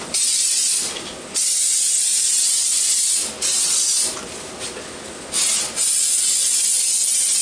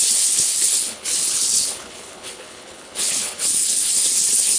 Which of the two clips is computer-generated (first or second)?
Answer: second